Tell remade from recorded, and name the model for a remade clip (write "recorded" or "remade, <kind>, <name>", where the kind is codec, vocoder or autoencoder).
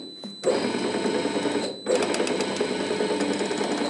recorded